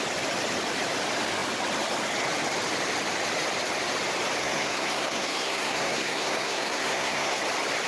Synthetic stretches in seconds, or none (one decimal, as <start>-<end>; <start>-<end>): 4.4-7.4